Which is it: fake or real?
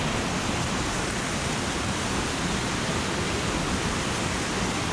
real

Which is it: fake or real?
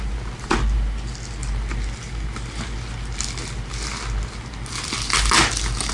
real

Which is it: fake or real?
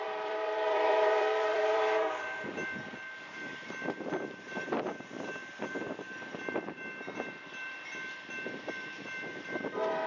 fake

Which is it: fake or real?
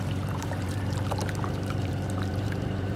fake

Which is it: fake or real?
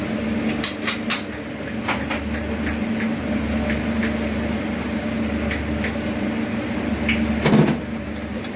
real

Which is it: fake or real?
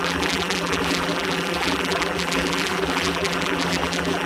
fake